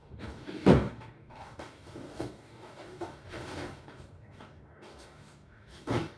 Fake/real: fake